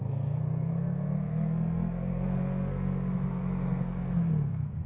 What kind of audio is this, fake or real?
fake